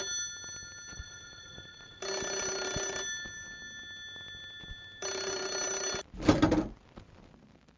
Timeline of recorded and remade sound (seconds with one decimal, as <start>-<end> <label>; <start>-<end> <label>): 0.0-0.9 recorded; 0.9-2.0 remade; 2.0-7.8 recorded